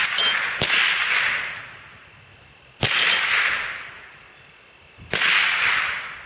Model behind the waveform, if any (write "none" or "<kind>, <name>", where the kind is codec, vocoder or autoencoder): none